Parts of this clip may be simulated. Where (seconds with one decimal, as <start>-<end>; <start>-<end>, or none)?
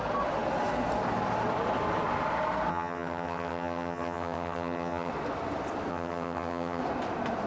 2.7-5.1; 5.9-6.8